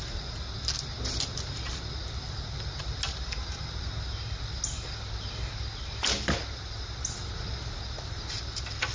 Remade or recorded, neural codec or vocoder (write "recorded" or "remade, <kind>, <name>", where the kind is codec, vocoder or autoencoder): recorded